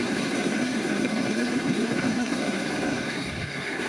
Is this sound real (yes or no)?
no